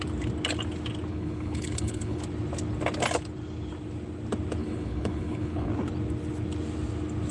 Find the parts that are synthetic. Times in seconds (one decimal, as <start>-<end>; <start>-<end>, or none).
1.1-2.2; 4.6-5.7